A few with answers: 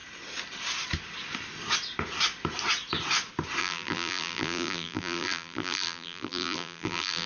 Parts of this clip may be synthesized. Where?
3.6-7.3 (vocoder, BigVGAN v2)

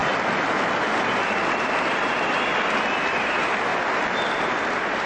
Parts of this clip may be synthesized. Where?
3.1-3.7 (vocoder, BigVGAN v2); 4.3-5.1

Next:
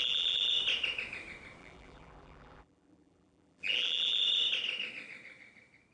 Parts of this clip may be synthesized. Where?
0.0-0.5 (vocoder, BigVGAN v2); 1.6-4.2

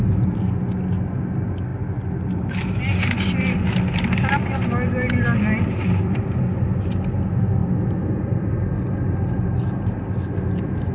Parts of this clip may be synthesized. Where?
none